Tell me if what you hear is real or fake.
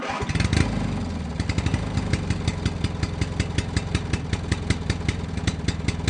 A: real